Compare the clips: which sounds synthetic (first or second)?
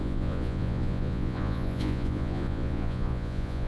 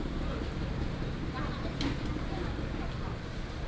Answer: first